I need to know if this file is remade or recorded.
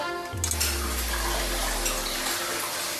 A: recorded